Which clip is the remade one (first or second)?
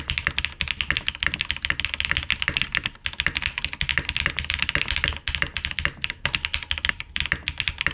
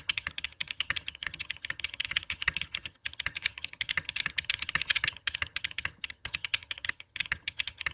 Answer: second